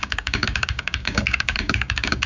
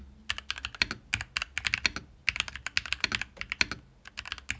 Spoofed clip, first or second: first